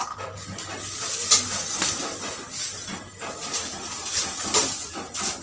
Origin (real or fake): real